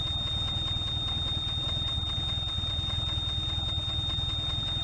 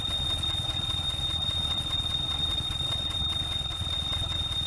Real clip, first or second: first